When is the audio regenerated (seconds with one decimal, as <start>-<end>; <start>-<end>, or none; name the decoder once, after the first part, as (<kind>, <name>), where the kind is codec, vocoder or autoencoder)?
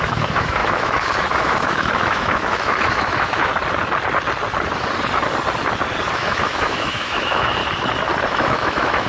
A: 0.0-3.5 (autoencoder, DAC-VAE); 6.1-7.6; 8.3-9.1